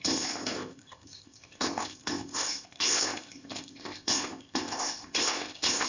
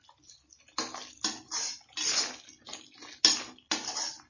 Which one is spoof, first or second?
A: first